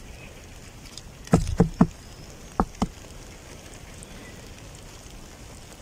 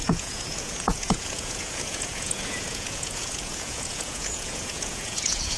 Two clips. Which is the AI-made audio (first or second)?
second